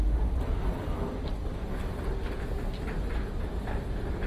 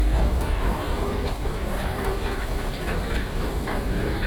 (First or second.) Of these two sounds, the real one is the first